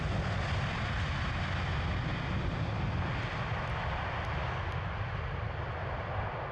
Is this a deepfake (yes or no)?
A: no